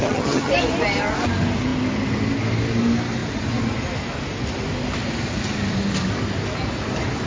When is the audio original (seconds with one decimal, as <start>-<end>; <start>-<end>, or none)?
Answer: 0.5-7.3